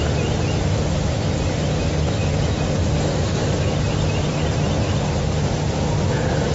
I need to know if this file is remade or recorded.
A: recorded